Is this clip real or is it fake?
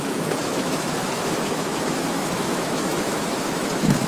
fake